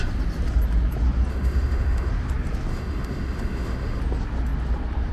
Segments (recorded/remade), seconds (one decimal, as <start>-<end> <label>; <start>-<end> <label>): 0.0-1.3 recorded; 1.3-2.1 remade; 2.1-2.7 recorded; 2.7-4.0 remade; 4.0-5.1 recorded